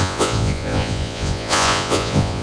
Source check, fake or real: fake